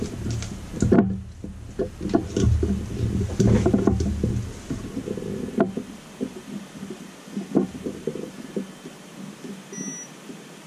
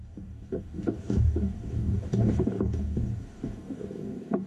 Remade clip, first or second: second